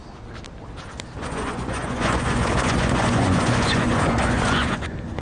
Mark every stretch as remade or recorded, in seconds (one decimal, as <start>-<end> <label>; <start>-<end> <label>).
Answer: 0.0-1.2 recorded; 1.2-5.2 remade